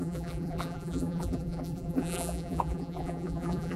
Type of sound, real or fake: fake